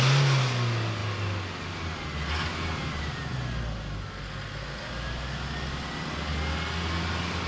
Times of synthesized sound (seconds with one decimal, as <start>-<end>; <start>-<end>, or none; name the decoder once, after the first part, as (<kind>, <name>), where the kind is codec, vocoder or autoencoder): none